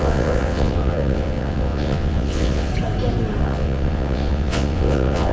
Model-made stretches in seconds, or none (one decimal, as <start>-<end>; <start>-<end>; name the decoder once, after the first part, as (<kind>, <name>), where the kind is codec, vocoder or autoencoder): 0.0-2.7 (vocoder, WaveNeXt); 3.4-5.3